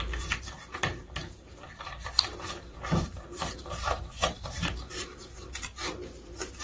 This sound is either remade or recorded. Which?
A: remade